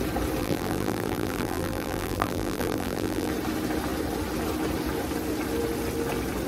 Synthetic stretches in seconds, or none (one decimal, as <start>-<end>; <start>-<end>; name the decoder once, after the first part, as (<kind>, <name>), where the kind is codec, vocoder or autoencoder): 0.4-3.3 (vocoder, BigVGAN v2)